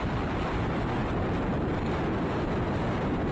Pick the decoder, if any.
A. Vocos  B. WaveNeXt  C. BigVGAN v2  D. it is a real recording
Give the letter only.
D